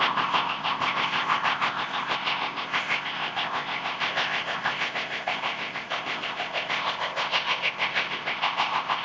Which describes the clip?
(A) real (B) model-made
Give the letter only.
B